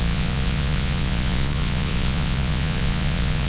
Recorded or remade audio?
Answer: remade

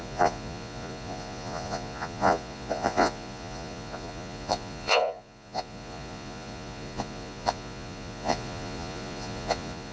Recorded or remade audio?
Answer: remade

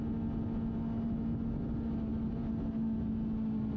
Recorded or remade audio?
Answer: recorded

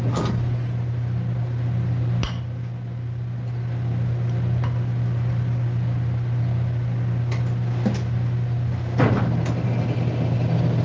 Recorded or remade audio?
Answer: recorded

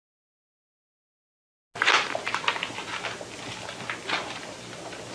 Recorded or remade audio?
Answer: recorded